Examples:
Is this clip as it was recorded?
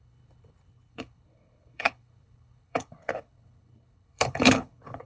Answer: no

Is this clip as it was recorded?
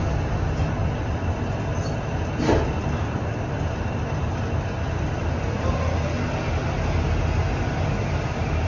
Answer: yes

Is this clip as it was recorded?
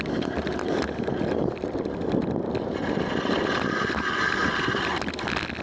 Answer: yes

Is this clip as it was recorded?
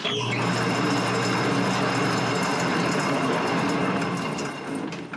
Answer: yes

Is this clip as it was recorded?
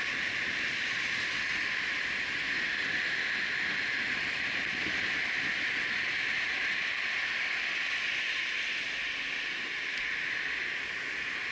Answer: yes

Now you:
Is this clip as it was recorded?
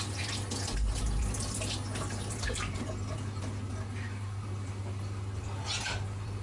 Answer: yes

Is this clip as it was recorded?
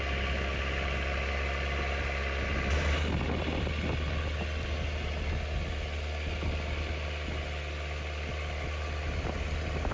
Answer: yes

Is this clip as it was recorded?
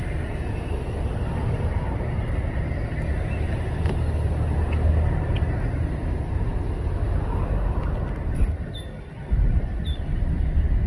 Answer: yes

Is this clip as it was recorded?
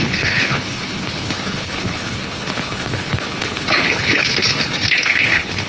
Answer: no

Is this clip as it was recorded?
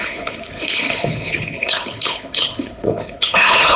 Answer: no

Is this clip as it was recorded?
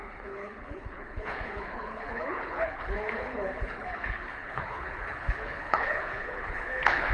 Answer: no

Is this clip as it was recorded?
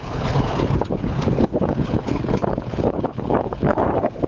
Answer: no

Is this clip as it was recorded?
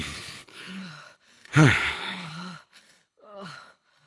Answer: no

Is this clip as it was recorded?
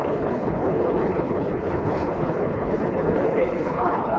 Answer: no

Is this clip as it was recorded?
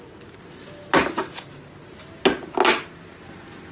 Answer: yes